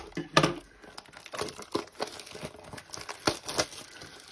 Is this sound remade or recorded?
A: recorded